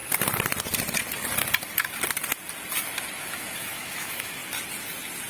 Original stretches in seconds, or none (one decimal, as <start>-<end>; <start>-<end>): 0.0-3.2; 4.4-5.3